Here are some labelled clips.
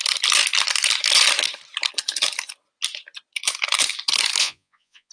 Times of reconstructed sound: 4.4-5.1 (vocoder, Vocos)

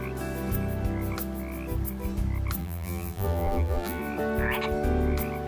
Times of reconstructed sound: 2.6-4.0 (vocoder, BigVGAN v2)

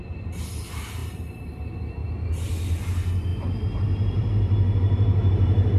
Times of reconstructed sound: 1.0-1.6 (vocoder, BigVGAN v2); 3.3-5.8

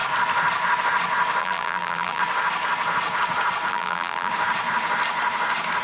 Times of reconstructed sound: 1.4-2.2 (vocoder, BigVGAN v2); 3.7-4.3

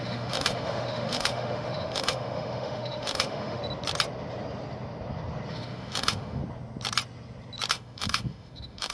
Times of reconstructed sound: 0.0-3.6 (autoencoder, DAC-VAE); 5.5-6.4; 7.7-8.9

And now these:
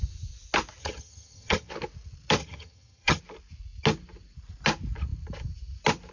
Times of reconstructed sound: 0.8-1.7 (vocoder, HiFi-GAN); 2.4-3.2